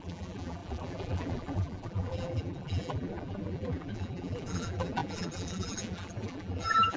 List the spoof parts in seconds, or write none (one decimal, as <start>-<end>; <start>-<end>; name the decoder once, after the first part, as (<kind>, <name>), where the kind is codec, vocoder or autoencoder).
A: 0.0-7.0 (vocoder, BigVGAN v2)